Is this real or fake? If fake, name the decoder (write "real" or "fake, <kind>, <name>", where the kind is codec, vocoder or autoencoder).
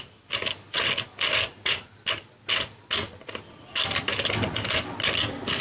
real